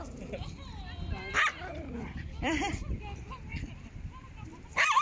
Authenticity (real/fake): fake